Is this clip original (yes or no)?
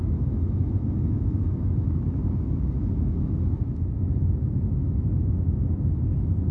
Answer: no